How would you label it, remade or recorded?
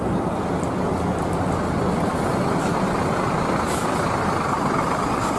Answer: recorded